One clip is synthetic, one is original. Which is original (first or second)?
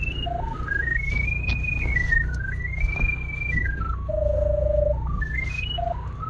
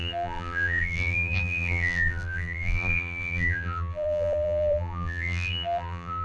first